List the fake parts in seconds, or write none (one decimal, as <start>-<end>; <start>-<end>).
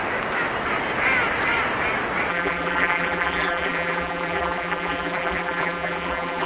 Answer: 2.3-6.5